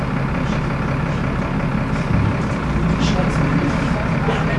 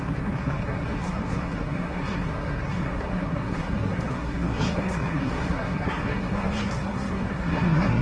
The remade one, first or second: second